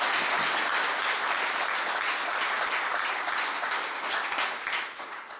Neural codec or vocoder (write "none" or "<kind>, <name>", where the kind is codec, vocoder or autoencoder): none